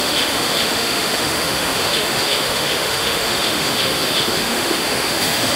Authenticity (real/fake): fake